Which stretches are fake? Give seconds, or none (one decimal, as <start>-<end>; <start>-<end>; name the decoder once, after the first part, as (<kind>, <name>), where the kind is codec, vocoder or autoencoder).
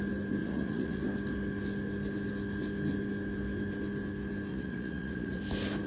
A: 0.4-1.0 (vocoder, Vocos); 4.5-5.4